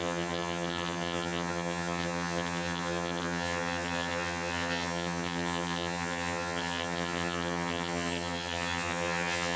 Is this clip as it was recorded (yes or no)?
no